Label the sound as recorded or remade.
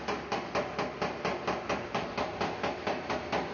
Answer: recorded